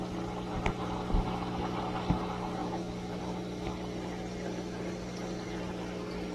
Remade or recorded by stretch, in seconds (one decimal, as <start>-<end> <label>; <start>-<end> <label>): 0.0-2.6 recorded; 2.6-3.2 remade; 3.2-6.3 recorded